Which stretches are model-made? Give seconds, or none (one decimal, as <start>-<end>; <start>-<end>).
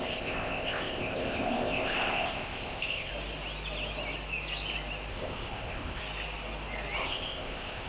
0.0-3.1; 5.1-6.0; 7.0-7.9